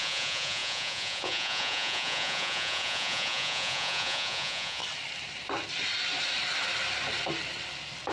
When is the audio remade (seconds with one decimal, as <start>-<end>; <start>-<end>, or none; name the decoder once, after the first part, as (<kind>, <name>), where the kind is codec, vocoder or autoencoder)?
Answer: 0.0-4.8 (vocoder, Vocos)